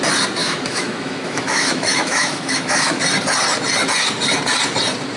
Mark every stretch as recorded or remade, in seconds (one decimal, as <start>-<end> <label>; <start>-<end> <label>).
0.0-0.4 recorded; 0.4-3.0 remade; 3.0-5.2 recorded